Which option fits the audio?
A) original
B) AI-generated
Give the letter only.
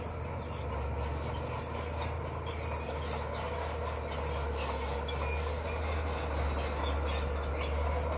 A